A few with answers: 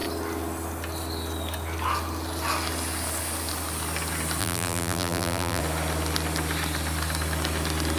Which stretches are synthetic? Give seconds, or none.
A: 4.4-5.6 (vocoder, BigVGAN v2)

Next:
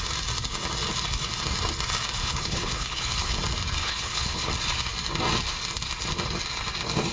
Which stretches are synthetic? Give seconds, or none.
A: 2.2-3.3 (codec, HILCodec); 3.8-4.5

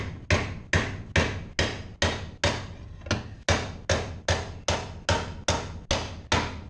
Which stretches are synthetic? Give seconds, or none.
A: none

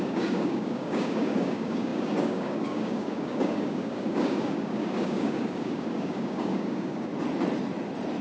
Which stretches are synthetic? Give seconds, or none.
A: 0.0-7.1 (codec, DAC)

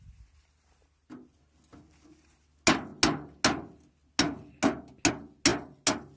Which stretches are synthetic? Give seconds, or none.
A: none

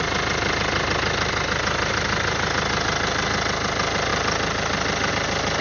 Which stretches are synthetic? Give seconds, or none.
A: none